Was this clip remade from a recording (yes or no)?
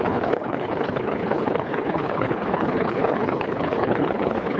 yes